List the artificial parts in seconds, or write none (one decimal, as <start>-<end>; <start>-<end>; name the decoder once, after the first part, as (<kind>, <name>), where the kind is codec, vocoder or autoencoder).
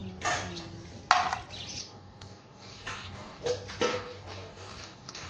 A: 1.8-3.4 (codec, DAC); 3.9-5.3